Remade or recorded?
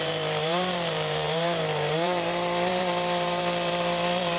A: remade